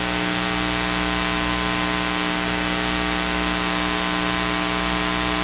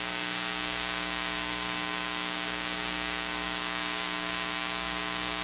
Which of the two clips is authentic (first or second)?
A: first